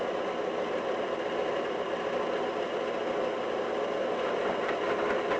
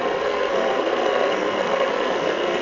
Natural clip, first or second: first